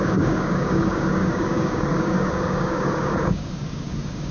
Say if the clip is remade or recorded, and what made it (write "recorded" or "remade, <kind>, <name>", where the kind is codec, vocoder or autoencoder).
remade, codec, DAC